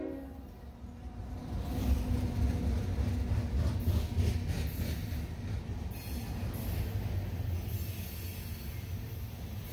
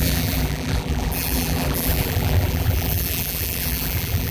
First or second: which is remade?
second